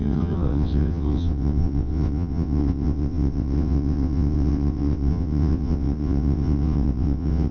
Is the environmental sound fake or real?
fake